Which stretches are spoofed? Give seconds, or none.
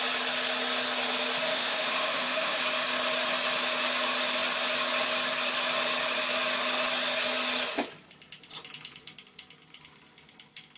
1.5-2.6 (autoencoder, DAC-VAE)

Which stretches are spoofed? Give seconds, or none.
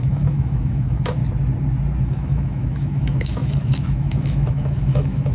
0.0-1.2 (autoencoder, DAC-VAE); 2.0-5.3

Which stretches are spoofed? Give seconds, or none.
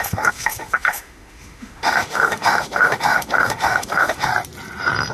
0.0-4.3 (autoencoder, DAC-VAE)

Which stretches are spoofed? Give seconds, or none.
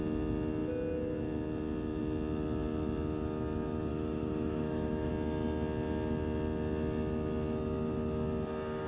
3.9-5.1 (autoencoder, DAC-VAE)